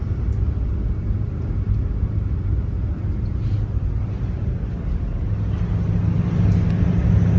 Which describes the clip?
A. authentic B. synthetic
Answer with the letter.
A